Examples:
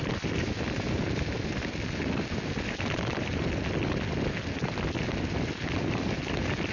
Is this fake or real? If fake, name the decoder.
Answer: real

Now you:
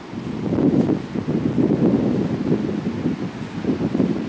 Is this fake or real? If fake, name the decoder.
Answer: real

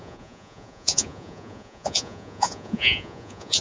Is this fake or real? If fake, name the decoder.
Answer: fake, vocoder, Vocos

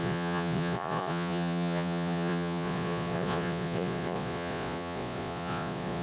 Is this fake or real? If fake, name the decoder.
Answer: fake, vocoder, Vocos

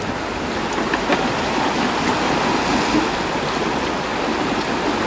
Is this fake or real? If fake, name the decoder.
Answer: real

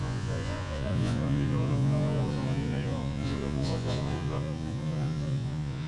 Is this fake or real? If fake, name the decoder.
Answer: fake, vocoder, Vocos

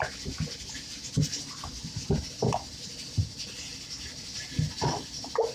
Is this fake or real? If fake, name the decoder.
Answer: real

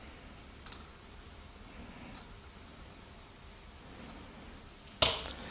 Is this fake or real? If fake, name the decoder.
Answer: real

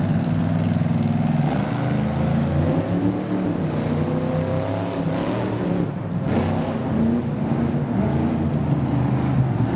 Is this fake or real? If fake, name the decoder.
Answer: real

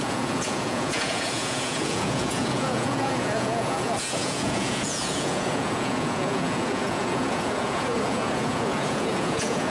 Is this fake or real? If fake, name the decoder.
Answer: fake, vocoder, Vocos